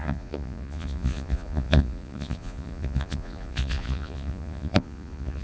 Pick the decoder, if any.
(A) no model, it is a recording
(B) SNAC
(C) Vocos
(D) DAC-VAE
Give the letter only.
C